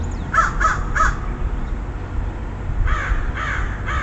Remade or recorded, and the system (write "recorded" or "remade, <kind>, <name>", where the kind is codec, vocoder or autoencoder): recorded